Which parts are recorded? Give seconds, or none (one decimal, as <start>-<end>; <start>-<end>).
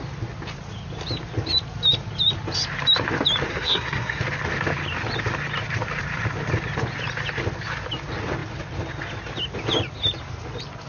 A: 0.0-3.5; 4.2-10.9